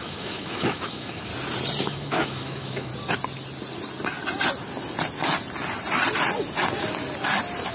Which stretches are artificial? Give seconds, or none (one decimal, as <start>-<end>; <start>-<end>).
0.0-1.3; 1.8-2.9